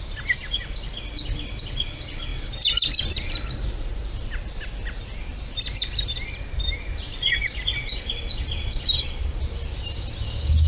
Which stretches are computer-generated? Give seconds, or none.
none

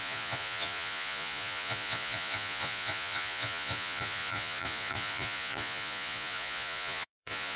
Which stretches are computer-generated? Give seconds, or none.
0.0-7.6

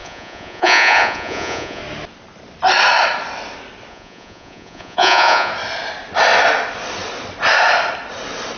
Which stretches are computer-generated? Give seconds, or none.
0.0-1.8; 3.9-5.5

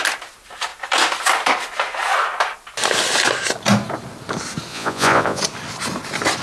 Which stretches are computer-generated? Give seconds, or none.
4.7-5.4

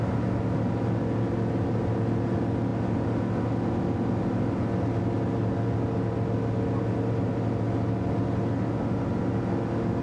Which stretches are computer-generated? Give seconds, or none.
none

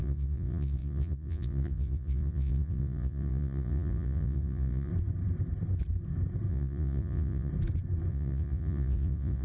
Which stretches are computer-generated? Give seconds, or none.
0.0-4.9; 6.5-7.5; 8.1-9.4